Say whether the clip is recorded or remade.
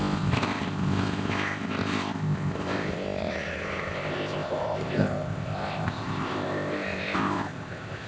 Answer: remade